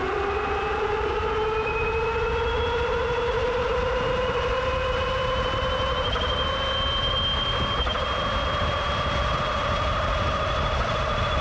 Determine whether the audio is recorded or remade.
recorded